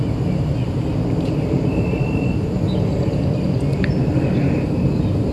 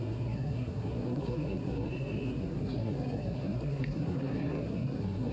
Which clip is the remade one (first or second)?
second